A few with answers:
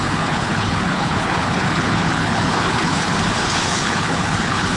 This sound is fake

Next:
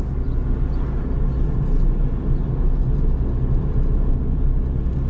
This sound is real